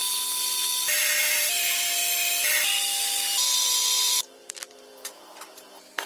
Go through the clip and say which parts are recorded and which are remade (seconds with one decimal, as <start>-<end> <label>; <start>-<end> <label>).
0.0-1.0 recorded; 1.0-2.0 remade; 2.0-4.0 recorded; 4.0-6.1 remade